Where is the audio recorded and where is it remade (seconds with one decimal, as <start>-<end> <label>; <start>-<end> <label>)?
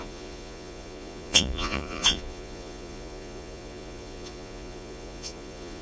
0.0-5.8 remade